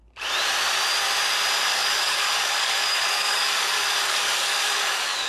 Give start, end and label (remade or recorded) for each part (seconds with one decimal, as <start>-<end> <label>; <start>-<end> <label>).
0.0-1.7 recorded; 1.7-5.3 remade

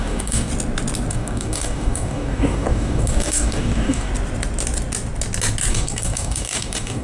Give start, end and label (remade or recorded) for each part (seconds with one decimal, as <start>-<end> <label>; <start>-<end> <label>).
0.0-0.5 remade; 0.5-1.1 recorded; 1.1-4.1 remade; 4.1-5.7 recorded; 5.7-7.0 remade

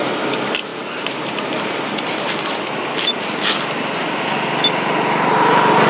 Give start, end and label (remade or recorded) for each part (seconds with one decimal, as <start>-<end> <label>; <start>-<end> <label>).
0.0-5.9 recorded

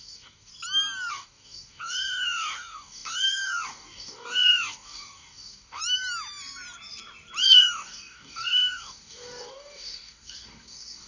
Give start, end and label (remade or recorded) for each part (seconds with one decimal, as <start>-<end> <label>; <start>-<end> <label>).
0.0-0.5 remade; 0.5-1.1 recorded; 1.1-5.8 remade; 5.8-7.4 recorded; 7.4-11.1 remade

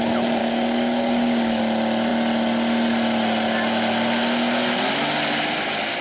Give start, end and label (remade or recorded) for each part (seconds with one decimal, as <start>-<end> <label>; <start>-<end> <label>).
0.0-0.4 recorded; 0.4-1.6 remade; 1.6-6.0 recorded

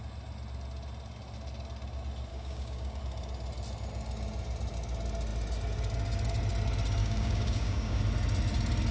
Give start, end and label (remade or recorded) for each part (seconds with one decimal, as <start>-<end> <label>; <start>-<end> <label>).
0.0-2.3 recorded; 2.3-3.0 remade; 3.0-7.0 recorded; 7.0-8.0 remade; 8.0-8.9 recorded

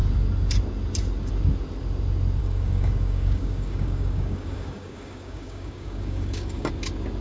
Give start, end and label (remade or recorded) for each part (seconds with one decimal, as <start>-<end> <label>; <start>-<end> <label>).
0.0-2.4 recorded; 2.4-6.7 remade; 6.7-7.2 recorded

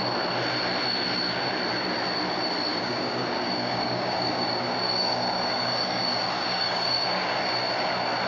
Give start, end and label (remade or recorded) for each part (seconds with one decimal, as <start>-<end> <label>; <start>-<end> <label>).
0.0-2.7 recorded; 2.7-7.4 remade; 7.4-8.3 recorded